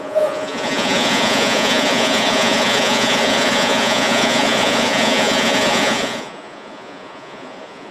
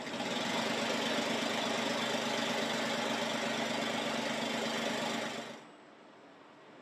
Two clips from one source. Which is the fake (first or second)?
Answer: first